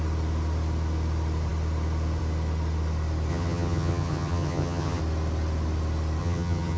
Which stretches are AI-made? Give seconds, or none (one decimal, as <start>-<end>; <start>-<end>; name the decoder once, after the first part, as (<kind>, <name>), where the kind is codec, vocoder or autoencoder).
3.3-5.0 (vocoder, HiFi-GAN); 6.2-6.8

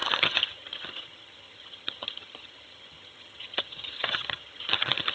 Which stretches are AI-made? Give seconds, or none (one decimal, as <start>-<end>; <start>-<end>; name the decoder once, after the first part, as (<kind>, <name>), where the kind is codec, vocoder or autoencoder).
0.0-5.1 (vocoder, HiFi-GAN)

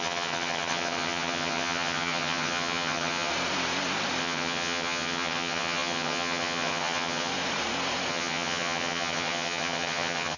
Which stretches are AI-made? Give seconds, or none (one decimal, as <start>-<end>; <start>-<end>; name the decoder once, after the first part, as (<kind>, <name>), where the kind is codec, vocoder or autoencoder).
0.0-3.3 (vocoder, HiFi-GAN); 4.2-7.3; 8.1-10.4

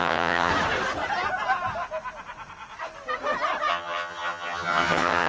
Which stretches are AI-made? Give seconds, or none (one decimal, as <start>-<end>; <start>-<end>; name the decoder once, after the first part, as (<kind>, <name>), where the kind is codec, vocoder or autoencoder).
0.0-0.5 (vocoder, HiFi-GAN); 3.7-5.3